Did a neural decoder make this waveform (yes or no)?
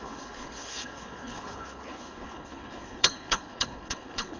yes